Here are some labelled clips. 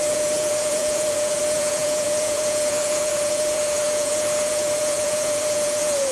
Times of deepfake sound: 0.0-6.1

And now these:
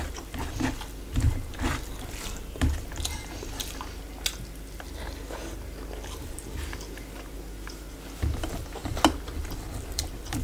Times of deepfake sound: none

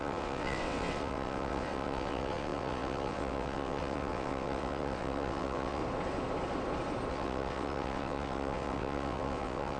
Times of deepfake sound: 0.0-5.8; 7.1-9.8

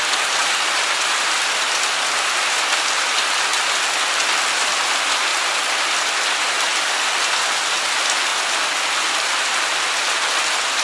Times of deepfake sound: 0.0-3.5; 4.6-5.3; 6.8-10.8

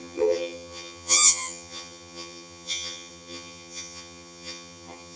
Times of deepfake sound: 0.0-5.2